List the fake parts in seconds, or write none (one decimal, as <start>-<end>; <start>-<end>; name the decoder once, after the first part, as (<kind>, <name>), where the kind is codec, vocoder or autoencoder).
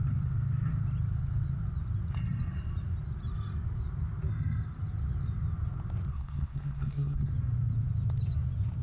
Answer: 6.1-7.3 (codec, SNAC)